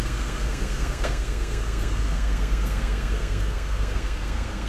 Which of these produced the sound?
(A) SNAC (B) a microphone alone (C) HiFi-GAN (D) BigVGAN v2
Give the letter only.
A